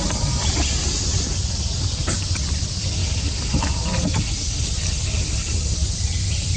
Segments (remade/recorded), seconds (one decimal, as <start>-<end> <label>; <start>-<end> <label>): 0.0-5.8 recorded; 5.8-6.6 remade